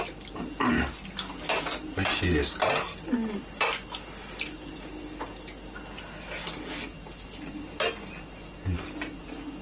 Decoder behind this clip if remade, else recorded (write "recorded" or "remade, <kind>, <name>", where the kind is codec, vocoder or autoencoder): recorded